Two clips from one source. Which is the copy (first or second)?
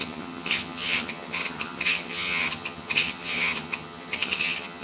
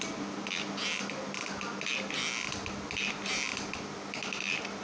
first